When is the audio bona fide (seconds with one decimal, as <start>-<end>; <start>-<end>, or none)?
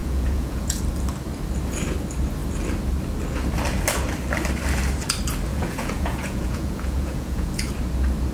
0.8-5.5; 7.7-8.3